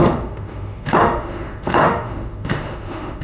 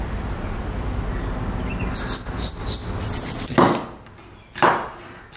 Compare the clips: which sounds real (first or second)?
second